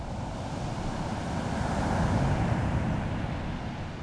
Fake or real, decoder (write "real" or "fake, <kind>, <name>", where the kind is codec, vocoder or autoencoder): real